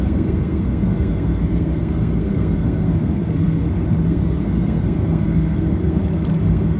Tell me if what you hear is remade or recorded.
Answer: remade